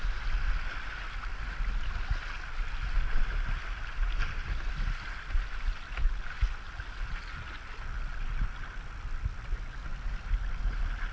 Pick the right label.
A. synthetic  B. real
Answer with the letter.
B